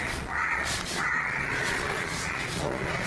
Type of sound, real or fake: fake